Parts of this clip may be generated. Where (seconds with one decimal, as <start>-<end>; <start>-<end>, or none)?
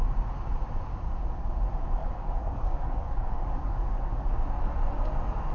2.0-4.3